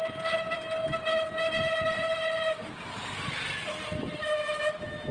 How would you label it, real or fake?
real